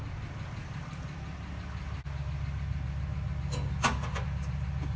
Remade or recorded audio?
recorded